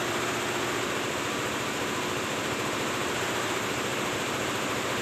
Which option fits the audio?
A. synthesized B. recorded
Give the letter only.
A